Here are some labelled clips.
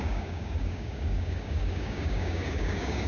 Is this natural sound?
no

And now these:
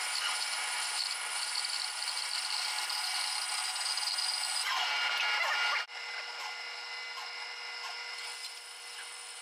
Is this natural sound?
yes